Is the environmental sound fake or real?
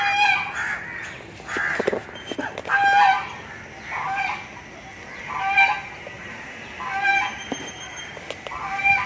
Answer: real